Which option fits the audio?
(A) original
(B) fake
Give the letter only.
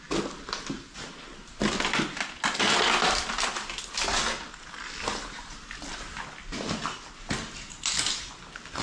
A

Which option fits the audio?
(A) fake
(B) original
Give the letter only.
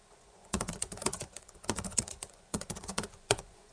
A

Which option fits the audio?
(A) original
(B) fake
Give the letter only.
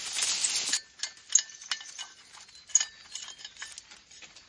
A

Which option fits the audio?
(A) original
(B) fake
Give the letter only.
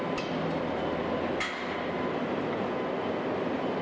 A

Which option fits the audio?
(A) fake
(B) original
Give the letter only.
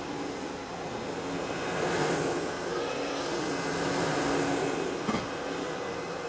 B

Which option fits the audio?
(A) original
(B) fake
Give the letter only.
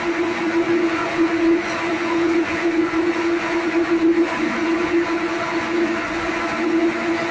B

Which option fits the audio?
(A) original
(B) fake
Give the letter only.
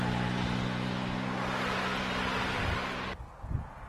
A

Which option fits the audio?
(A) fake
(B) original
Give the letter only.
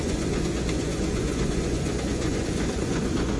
A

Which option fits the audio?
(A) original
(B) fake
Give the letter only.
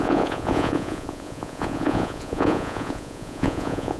B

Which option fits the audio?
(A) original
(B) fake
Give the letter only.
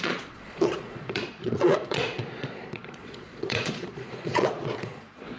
B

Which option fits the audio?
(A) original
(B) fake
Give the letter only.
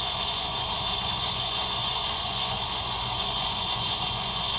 B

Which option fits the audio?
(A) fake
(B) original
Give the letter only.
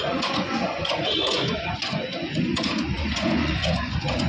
A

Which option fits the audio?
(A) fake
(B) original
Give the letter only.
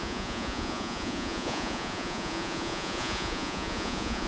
A